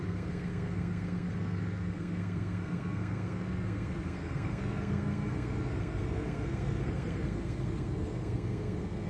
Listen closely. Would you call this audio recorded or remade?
remade